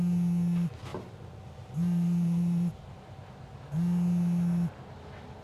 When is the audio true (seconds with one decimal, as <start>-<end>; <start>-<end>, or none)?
0.0-0.9; 2.8-5.4